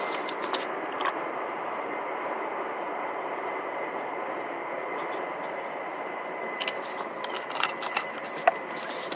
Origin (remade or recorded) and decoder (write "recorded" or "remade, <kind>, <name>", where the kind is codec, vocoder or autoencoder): recorded